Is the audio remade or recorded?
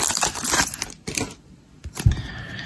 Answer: recorded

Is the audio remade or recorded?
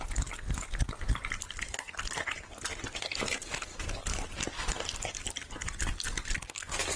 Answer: recorded